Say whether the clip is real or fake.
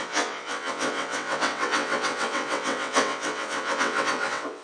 fake